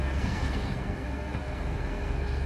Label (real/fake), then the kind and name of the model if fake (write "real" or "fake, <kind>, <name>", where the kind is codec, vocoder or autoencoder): fake, codec, SNAC